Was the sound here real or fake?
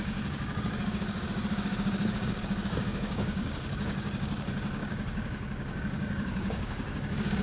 fake